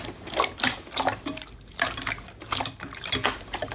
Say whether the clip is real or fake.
real